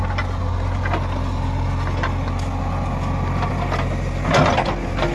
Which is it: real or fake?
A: real